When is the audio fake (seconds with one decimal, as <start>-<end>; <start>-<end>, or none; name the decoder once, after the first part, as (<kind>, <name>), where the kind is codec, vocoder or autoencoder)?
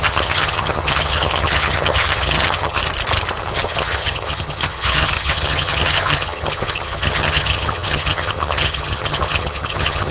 0.0-2.8 (vocoder, HiFi-GAN); 3.4-10.1